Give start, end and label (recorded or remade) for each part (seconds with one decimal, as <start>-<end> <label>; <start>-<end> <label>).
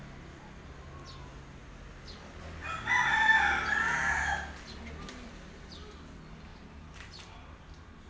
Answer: 0.0-6.5 recorded; 6.5-7.6 remade; 7.6-8.1 recorded